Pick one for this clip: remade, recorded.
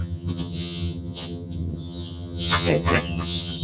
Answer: remade